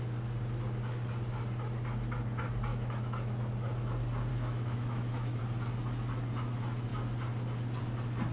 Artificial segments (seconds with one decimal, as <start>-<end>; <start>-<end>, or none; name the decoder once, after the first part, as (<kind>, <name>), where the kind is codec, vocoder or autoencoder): 2.7-3.4 (autoencoder, DAC-VAE); 4.3-5.4